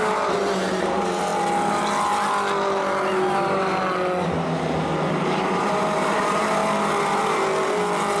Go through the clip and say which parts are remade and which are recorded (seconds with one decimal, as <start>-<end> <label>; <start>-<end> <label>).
0.0-1.3 remade; 1.3-5.1 recorded; 5.1-6.6 remade; 6.6-8.2 recorded